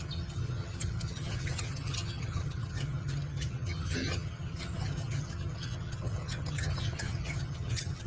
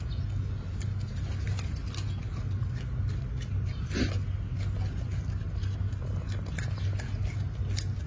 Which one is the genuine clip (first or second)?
second